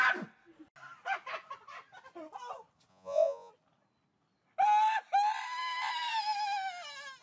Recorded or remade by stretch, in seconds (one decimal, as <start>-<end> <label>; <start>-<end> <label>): 0.0-2.9 recorded; 2.9-3.5 remade; 3.5-7.2 recorded